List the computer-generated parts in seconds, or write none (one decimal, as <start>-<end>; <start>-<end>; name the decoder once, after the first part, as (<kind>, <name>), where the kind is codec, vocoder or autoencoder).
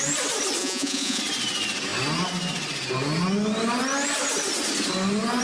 0.6-1.2 (vocoder, Vocos)